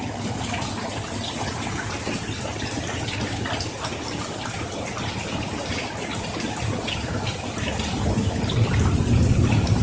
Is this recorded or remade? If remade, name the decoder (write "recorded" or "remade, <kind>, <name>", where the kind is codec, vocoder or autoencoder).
recorded